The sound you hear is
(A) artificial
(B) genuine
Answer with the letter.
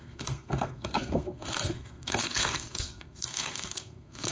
A